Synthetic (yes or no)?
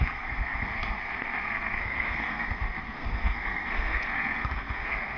yes